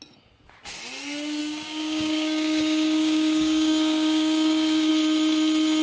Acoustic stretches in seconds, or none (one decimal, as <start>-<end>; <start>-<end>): 0.0-1.4; 4.9-5.8